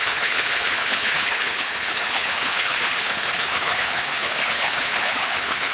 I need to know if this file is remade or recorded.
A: remade